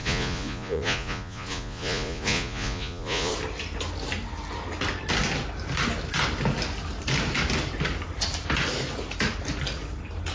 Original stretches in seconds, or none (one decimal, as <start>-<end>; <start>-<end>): 3.3-10.3